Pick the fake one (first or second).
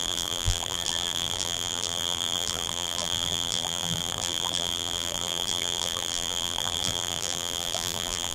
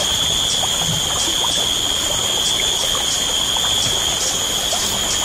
first